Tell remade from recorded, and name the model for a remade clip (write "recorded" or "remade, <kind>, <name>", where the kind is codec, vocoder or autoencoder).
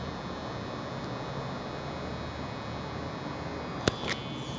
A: recorded